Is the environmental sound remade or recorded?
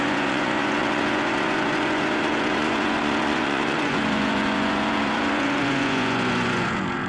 remade